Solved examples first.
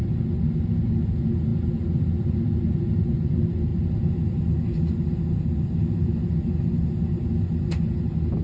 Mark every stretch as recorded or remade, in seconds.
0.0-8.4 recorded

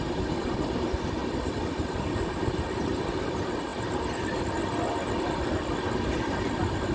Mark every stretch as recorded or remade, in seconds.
0.0-6.9 recorded

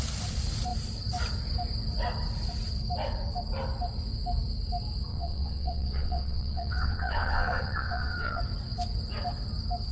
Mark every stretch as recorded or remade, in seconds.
0.0-5.1 recorded; 5.1-8.4 remade; 8.4-9.9 recorded

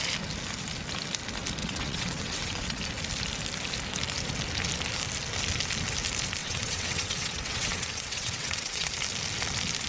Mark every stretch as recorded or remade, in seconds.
0.0-1.6 recorded; 1.6-2.8 remade; 2.8-6.4 recorded; 6.4-8.9 remade; 8.9-9.9 recorded